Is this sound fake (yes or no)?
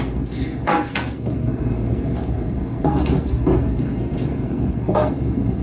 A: yes